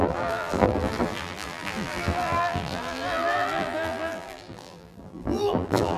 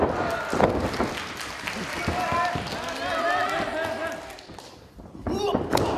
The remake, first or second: first